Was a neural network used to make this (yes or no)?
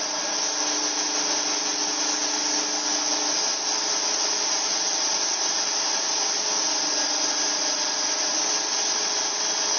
no